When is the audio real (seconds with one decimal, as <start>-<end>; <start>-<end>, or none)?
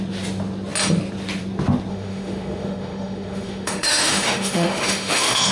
0.0-1.9